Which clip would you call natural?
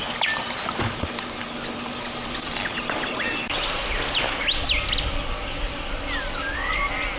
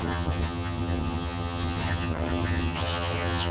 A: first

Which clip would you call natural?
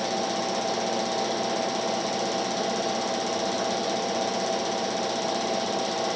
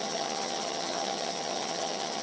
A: first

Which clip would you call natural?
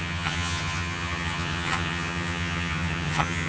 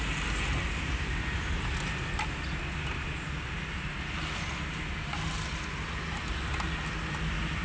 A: second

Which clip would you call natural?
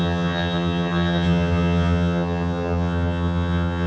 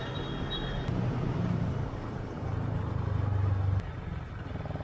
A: second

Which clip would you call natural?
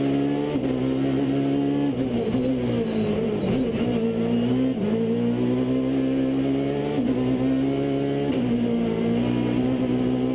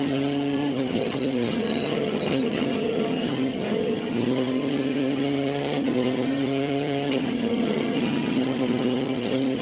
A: first